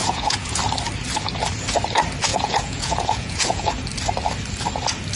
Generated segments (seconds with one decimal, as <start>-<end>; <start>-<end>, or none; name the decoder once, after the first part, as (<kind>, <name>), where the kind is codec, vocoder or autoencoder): 0.0-0.6 (vocoder, Vocos); 2.3-3.7